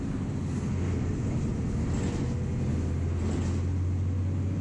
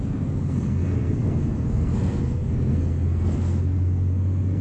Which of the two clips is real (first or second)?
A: first